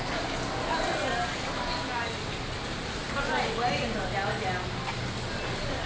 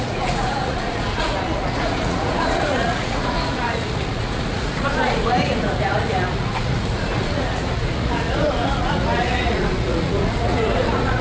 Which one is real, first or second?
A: first